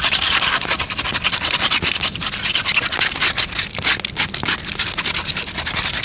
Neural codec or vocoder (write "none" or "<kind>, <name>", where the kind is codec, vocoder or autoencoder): none